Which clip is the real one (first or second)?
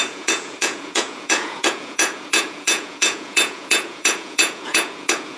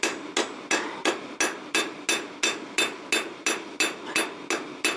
second